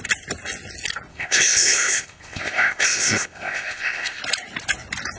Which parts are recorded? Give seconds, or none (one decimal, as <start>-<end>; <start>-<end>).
0.0-1.1; 4.2-5.2